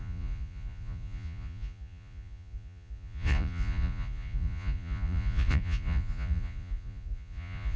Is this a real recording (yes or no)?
no